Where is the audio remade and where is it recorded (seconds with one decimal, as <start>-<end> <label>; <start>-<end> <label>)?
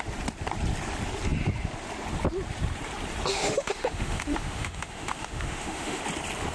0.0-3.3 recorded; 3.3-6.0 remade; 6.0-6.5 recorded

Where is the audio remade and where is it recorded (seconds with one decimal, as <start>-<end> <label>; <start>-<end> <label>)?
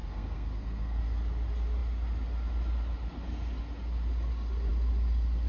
0.0-1.0 remade; 1.0-5.5 recorded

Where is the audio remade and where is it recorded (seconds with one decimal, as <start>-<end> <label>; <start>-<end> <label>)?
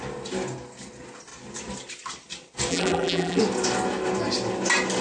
0.0-2.7 recorded; 2.7-3.4 remade; 3.4-5.0 recorded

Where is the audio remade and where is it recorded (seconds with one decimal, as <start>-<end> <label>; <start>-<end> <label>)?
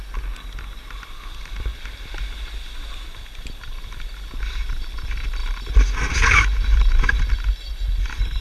0.0-8.4 recorded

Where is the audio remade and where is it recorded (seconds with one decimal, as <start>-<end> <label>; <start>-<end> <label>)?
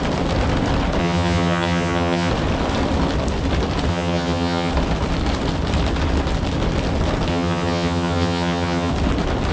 0.0-1.0 recorded; 1.0-2.3 remade; 2.3-3.9 recorded; 3.9-4.7 remade; 4.7-7.3 recorded; 7.3-8.9 remade; 8.9-9.5 recorded